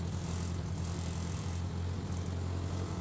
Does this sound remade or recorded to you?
recorded